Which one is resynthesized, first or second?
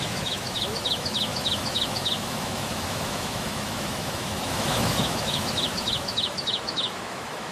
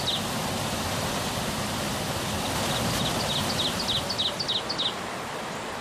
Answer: first